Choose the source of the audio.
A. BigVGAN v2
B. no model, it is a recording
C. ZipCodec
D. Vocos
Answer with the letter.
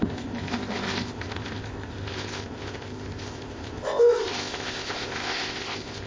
C